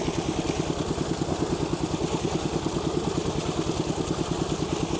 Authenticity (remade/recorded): recorded